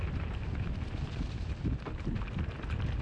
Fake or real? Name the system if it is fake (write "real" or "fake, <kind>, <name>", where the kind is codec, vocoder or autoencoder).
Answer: real